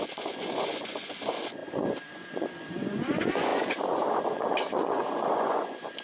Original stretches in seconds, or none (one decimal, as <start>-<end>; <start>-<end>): none